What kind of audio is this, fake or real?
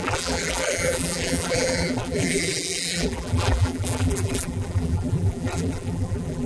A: fake